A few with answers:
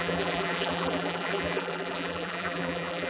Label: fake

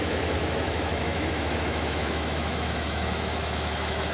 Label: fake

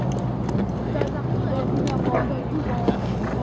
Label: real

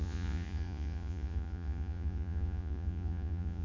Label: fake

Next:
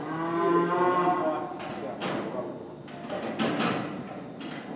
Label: real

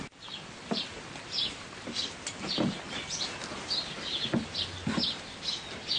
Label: real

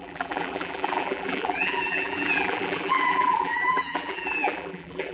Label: fake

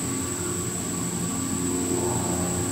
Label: real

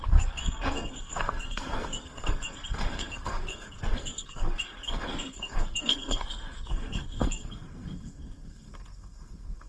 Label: fake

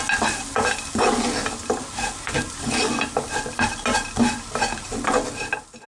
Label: real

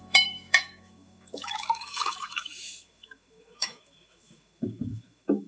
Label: fake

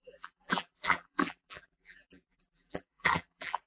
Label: fake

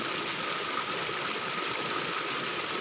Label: real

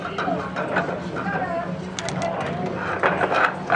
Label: real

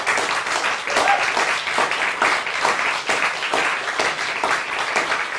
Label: real